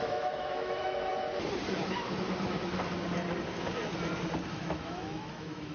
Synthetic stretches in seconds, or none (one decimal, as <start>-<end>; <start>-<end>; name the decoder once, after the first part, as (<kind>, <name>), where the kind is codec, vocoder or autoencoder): 0.0-1.1 (autoencoder, DAC-VAE); 4.5-5.7